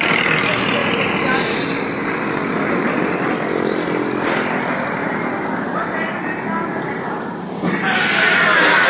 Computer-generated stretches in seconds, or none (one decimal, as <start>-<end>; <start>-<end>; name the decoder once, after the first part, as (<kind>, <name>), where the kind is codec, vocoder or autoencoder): none